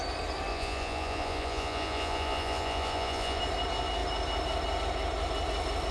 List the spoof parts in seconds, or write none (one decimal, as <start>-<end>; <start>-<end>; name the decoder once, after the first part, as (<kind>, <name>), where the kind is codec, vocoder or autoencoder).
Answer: 0.5-3.4 (vocoder, Vocos)